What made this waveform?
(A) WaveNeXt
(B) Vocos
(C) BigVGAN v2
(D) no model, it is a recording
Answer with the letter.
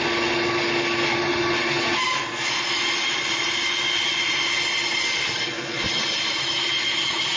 D